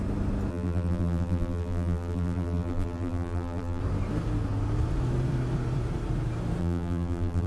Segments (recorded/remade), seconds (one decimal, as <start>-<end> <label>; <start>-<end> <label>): 0.0-0.5 recorded; 0.5-3.8 remade; 3.8-6.6 recorded; 6.6-7.5 remade